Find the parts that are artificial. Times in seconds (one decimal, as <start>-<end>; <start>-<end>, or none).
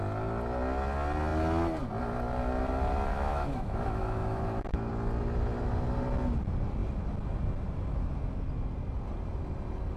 3.1-4.9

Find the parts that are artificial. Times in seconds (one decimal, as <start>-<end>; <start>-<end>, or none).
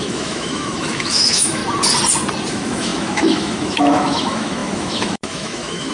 0.0-1.6; 2.5-5.9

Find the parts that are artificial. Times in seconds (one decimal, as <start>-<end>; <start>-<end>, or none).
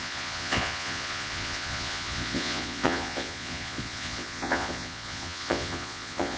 0.0-6.4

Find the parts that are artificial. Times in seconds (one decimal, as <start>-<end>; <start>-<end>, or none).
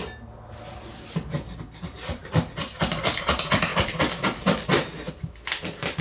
none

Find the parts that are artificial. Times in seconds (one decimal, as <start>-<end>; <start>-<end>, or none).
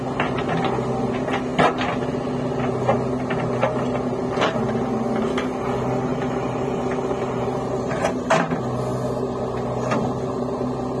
6.1-8.1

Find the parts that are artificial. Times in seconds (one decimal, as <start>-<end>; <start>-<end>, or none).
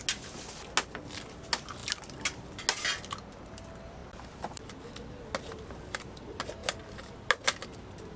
none